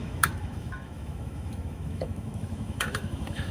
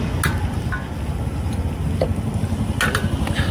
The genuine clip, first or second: second